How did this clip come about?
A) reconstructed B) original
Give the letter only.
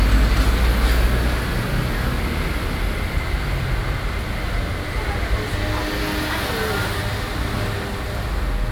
B